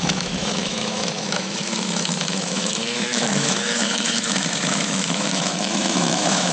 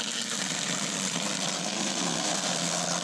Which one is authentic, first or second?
second